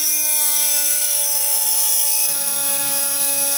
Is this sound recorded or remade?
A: remade